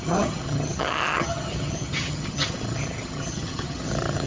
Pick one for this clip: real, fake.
fake